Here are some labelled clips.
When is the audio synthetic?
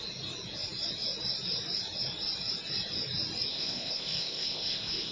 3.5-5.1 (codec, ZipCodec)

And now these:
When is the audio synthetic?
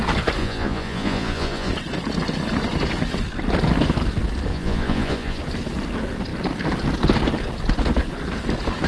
0.4-1.7 (vocoder, Vocos); 4.5-5.4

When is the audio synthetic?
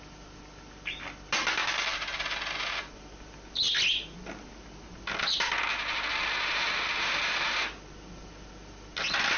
6.1-7.2 (vocoder, BigVGAN v2)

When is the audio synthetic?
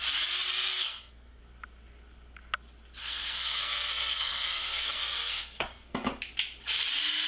0.7-1.4 (codec, SNAC); 3.0-6.1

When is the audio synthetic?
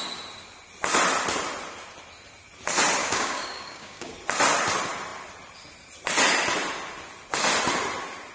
3.0-4.1 (codec, DAC)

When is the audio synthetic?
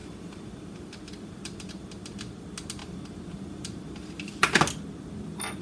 0.0-1.7 (vocoder, BigVGAN v2); 2.8-4.7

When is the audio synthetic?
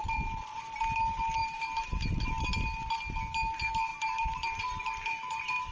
1.4-2.3 (vocoder, BigVGAN v2); 3.9-5.7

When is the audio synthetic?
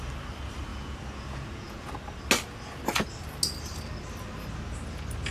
0.7-1.9 (vocoder, Vocos)